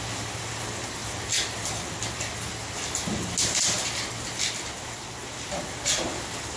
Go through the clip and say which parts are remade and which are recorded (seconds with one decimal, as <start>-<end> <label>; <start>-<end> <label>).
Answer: 0.0-6.6 recorded